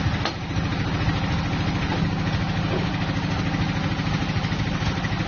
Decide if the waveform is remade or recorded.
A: recorded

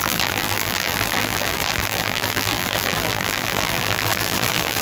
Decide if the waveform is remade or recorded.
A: remade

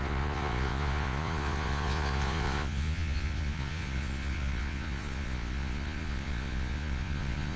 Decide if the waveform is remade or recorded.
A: remade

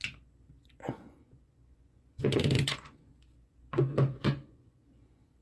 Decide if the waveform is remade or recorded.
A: remade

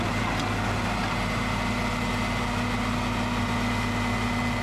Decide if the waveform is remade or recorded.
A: recorded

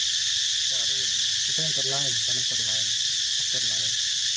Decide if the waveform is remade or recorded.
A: recorded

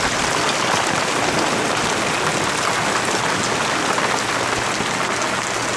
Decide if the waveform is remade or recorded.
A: recorded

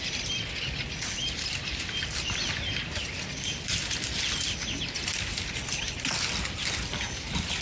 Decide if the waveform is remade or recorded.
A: recorded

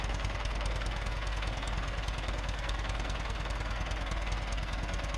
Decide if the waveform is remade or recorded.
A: remade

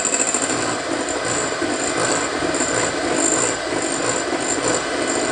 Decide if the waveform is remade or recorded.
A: recorded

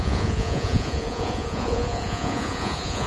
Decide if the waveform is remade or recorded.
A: remade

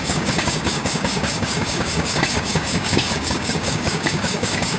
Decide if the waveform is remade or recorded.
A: remade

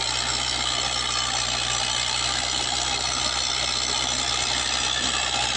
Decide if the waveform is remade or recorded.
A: recorded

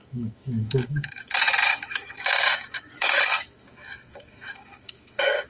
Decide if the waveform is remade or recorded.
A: remade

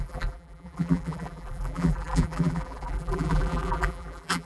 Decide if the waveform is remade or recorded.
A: remade